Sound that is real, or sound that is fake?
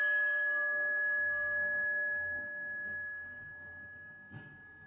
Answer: fake